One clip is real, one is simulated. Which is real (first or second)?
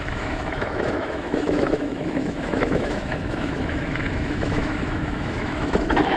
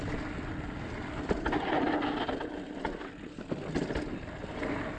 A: second